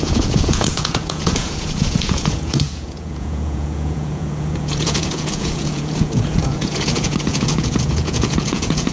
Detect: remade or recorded remade